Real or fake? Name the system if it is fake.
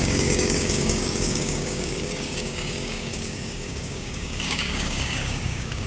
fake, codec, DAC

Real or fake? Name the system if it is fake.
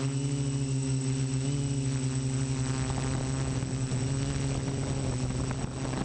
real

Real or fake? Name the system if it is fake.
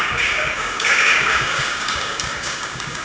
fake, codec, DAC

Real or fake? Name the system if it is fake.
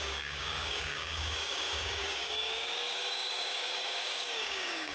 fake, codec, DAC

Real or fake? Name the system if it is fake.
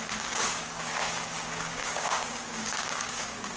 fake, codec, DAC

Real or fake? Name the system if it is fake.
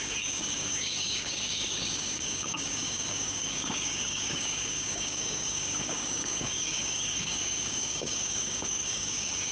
fake, codec, DAC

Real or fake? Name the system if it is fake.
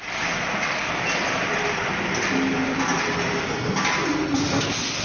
real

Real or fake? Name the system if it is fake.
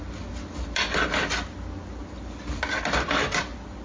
real